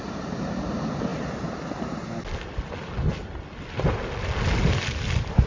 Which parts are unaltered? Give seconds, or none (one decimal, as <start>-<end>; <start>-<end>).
0.0-5.5